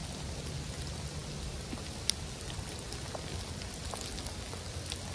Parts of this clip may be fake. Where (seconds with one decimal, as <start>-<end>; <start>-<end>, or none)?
none